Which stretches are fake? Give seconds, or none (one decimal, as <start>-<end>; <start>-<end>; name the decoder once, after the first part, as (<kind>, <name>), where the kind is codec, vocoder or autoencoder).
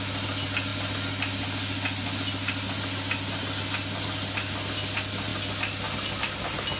none